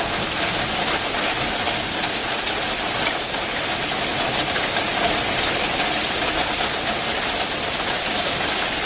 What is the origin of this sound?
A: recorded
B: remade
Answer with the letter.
A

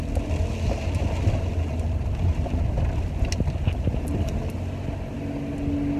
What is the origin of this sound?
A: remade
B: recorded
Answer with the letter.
B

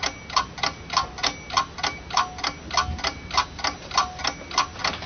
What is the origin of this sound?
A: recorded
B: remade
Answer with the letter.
A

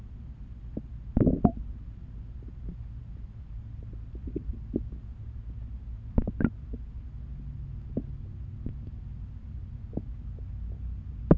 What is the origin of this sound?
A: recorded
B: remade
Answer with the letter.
A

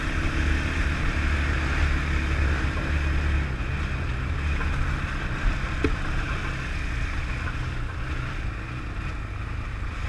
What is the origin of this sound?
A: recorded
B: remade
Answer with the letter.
A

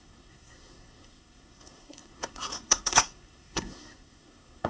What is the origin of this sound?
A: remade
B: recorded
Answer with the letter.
A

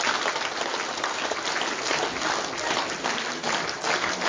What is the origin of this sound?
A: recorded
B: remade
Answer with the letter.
A